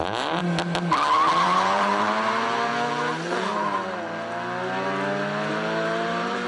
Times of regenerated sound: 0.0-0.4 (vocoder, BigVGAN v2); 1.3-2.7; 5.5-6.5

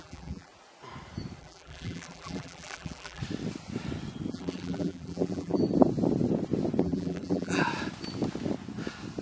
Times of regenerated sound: 0.0-0.5 (vocoder, BigVGAN v2); 1.4-3.2; 4.3-5.6; 6.8-7.6

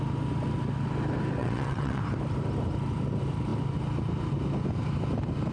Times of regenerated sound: 1.4-2.0 (vocoder, WaveNeXt)